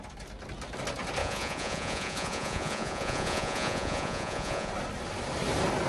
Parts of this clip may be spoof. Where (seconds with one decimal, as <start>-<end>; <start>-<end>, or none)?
1.2-4.7

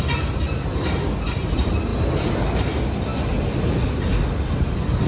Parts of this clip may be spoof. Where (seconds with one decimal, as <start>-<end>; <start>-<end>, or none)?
none